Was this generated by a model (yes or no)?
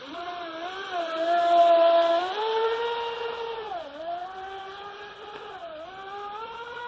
no